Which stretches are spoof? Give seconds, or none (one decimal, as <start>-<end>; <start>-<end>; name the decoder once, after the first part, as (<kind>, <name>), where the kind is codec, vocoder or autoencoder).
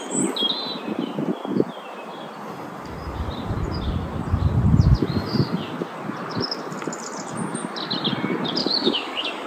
8.6-9.5 (codec, DAC)